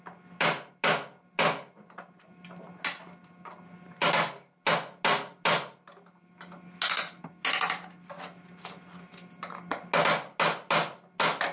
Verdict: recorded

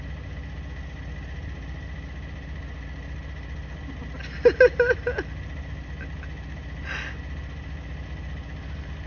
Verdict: recorded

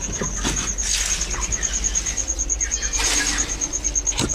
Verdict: recorded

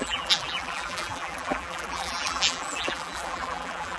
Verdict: remade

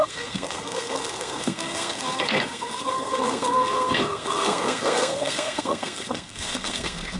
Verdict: remade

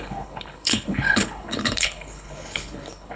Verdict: remade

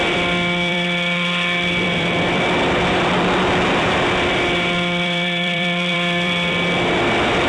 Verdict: remade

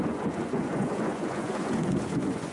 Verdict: remade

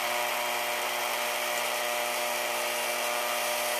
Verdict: recorded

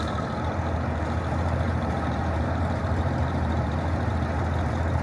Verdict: remade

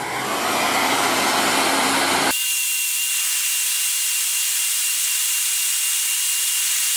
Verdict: recorded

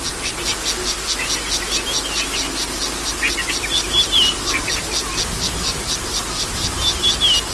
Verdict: recorded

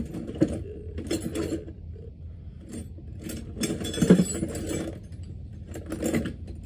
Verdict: recorded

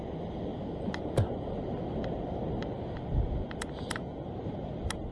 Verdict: recorded